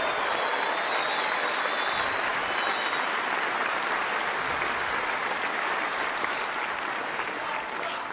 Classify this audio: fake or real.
real